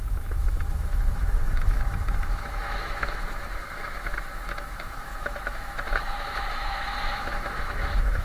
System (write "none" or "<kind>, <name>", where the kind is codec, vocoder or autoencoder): autoencoder, DAC-VAE